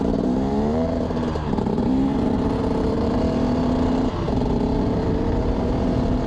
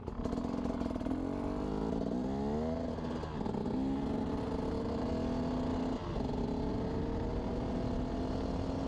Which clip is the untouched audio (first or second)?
second